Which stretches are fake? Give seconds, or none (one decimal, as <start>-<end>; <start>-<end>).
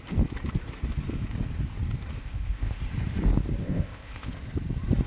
2.2-2.8; 3.6-4.3